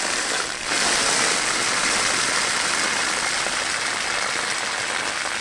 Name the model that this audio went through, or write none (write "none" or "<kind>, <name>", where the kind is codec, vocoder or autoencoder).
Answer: none